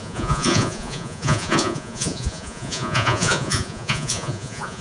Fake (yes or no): yes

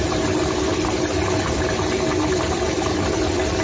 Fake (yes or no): no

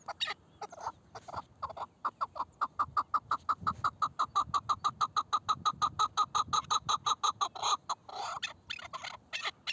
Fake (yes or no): no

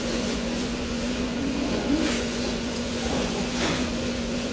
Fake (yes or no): yes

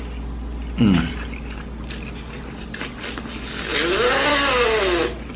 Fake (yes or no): no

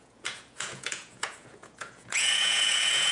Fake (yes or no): yes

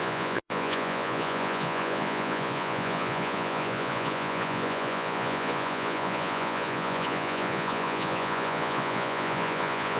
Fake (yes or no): yes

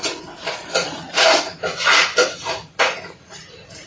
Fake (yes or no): yes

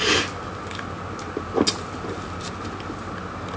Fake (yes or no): no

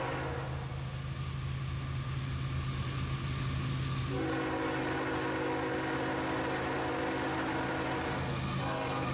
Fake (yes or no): no